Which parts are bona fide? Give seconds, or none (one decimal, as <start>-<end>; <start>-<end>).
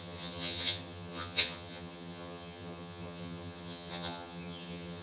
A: none